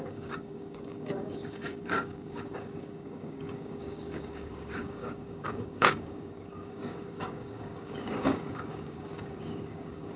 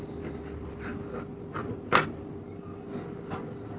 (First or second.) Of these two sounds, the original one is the second